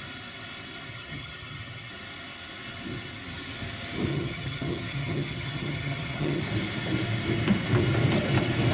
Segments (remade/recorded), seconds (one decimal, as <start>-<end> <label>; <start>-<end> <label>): 0.0-0.9 recorded; 0.9-1.9 remade; 1.9-4.1 recorded; 4.1-6.4 remade; 6.4-8.7 recorded